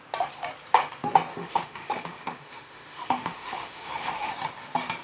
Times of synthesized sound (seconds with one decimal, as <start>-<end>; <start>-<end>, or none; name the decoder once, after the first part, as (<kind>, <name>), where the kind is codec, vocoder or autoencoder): 1.3-4.3 (autoencoder, DAC-VAE)